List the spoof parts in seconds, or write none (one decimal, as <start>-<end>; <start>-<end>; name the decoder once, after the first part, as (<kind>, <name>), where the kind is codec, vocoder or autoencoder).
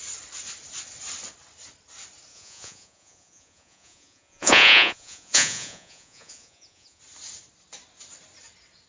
2.3-7.0 (vocoder, Vocos)